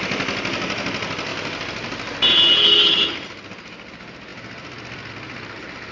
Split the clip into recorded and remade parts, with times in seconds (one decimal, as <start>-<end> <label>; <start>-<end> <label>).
0.0-1.3 recorded; 1.3-2.4 remade; 2.4-5.9 recorded